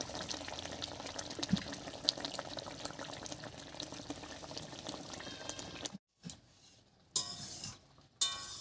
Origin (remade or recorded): recorded